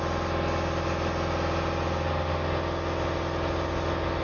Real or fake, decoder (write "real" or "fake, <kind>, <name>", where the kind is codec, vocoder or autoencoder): real